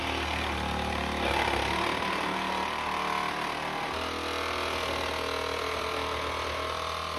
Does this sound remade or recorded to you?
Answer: recorded